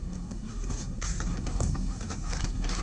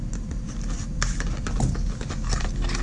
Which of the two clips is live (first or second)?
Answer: second